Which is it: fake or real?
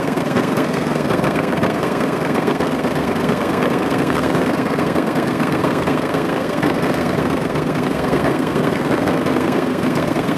fake